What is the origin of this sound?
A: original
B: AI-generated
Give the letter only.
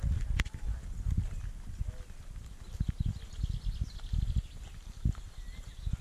A